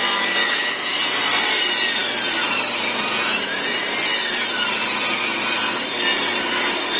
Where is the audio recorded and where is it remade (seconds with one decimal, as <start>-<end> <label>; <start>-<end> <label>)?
0.0-0.4 recorded; 0.4-1.0 remade; 1.0-7.0 recorded